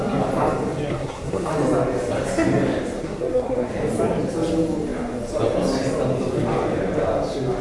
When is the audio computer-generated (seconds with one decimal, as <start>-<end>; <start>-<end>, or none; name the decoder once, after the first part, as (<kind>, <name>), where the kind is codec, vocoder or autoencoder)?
0.9-1.5 (codec, SNAC); 3.0-3.7